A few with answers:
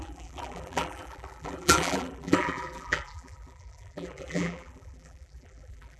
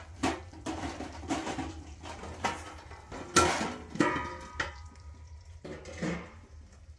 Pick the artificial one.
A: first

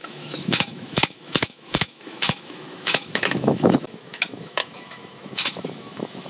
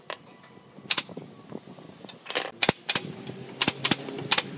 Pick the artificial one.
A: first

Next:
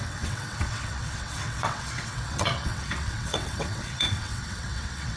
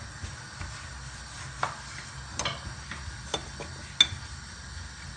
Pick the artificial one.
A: first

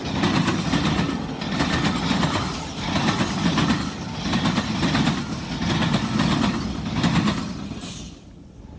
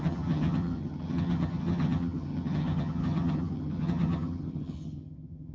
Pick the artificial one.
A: second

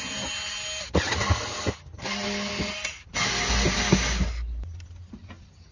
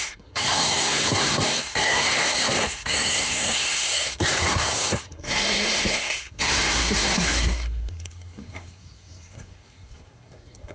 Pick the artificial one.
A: second